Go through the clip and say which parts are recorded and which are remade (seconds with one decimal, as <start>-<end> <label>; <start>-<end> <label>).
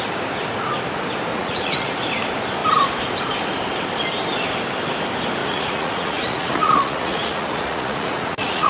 0.0-1.3 recorded; 1.3-1.9 remade; 1.9-5.4 recorded; 5.4-8.7 remade